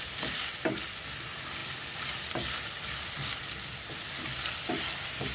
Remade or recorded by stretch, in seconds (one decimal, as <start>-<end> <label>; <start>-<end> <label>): 0.0-5.3 recorded